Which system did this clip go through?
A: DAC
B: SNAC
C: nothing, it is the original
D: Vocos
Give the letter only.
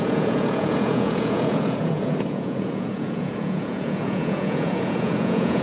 D